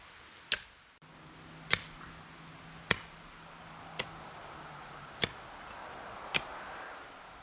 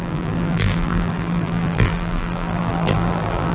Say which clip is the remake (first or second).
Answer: second